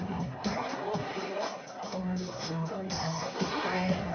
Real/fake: fake